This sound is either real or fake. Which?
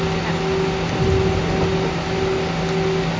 real